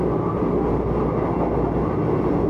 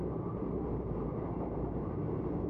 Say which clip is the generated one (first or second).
second